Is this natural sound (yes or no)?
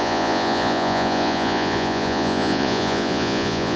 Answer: no